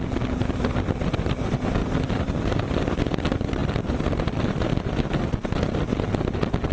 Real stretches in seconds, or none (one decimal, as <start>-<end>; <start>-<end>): 0.0-6.7